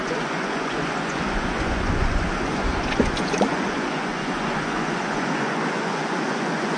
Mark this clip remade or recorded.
remade